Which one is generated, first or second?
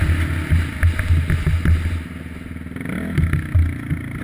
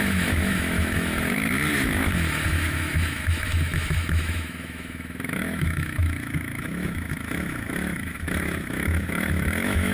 second